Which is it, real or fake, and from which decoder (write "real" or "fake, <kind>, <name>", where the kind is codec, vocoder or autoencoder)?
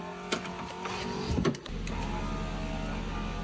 real